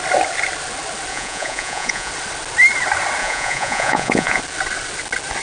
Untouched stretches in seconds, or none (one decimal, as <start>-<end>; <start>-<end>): 0.0-1.1; 2.1-3.2; 4.4-5.4